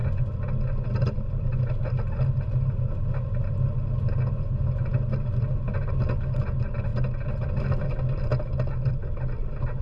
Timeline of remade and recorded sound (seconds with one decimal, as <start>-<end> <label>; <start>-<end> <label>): 0.0-9.8 recorded